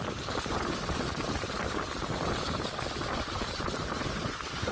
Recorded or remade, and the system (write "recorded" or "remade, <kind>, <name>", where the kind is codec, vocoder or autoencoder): recorded